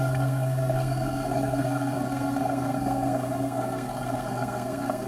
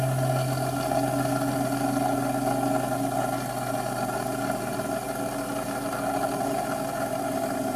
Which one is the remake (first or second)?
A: first